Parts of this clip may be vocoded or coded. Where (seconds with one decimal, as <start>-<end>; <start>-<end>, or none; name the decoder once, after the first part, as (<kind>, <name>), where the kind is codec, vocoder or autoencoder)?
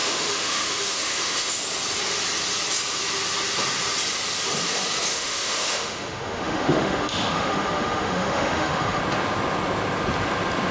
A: 0.0-1.5 (autoencoder, DAC-VAE); 5.1-9.0